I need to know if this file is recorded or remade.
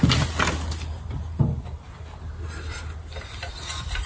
recorded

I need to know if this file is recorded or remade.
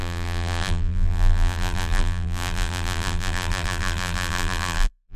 remade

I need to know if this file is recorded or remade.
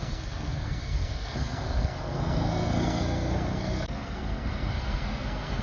remade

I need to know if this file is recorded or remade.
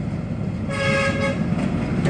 recorded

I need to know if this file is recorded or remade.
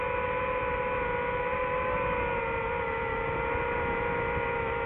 recorded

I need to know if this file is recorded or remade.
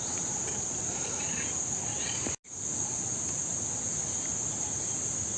recorded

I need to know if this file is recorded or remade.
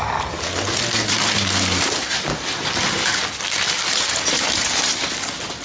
recorded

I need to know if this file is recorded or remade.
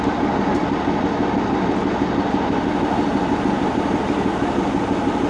recorded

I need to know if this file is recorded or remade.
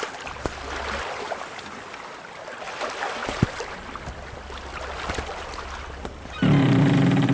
recorded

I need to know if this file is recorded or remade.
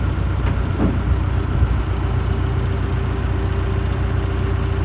recorded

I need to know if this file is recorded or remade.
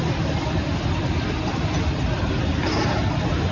remade